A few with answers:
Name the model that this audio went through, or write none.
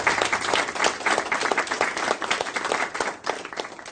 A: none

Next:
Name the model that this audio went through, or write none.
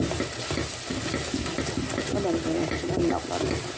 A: none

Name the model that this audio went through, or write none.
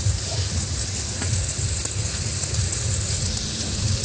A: vocoder, Vocos